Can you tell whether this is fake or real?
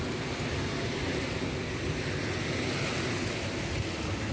real